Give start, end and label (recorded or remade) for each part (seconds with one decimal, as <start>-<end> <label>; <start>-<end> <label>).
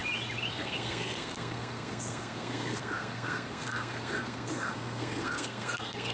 0.0-0.5 recorded; 0.5-6.1 remade